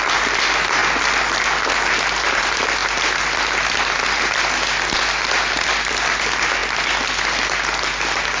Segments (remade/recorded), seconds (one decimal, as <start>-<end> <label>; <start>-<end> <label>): 0.0-8.4 recorded